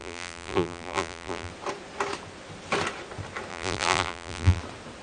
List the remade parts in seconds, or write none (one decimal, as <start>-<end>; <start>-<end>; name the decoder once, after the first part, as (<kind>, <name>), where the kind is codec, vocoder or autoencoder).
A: 0.0-1.5 (vocoder, BigVGAN v2); 3.5-4.6

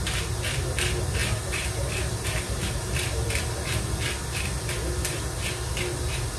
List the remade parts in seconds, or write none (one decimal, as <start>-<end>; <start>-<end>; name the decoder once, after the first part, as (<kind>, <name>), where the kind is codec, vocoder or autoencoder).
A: 1.2-4.2 (vocoder, BigVGAN v2)

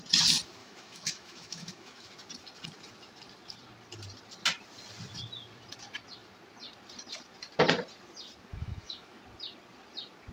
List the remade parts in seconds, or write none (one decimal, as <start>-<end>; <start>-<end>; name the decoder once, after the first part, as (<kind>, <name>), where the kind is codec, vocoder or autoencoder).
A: 0.6-2.1 (autoencoder, DAC-VAE); 8.5-9.2

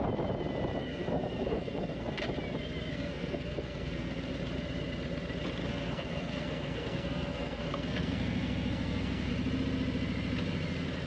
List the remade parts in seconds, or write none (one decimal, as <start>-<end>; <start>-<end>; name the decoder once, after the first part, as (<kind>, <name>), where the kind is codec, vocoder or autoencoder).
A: 0.8-2.2 (codec, SNAC); 2.9-4.3; 5.6-9.3

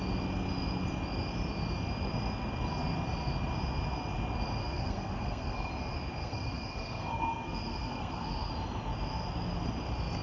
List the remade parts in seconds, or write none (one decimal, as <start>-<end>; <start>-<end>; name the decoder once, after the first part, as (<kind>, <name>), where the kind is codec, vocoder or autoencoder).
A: 4.6-5.7 (codec, SNAC); 6.2-8.5